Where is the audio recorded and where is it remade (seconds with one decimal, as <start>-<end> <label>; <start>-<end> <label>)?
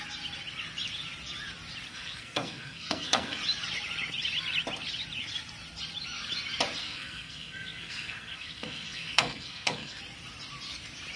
0.0-1.9 recorded; 1.9-3.4 remade; 3.4-6.8 recorded; 6.8-10.0 remade; 10.0-11.2 recorded